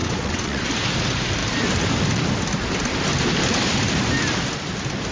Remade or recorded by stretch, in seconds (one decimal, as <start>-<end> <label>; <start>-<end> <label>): 0.0-0.6 remade; 0.6-5.1 recorded

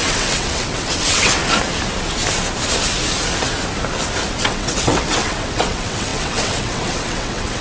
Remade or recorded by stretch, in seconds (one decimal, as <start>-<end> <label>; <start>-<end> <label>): 0.0-1.4 remade; 1.4-4.4 recorded; 4.4-7.6 remade